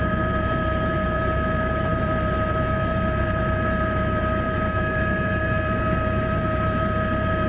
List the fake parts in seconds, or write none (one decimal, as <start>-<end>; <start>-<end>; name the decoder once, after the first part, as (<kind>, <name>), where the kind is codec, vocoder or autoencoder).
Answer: 0.0-7.5 (vocoder, BigVGAN v2)